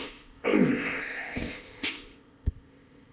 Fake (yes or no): yes